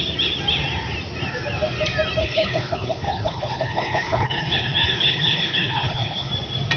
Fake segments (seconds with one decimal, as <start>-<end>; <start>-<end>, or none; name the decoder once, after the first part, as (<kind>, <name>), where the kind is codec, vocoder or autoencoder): 2.2-6.3 (codec, HILCodec)